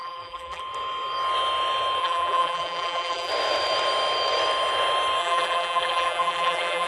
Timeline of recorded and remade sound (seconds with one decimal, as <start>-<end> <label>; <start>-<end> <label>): 0.0-0.6 remade; 0.6-2.0 recorded; 2.0-3.3 remade; 3.3-5.2 recorded; 5.2-6.9 remade